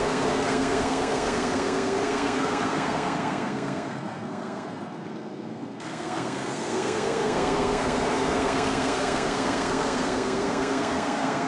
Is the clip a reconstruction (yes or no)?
yes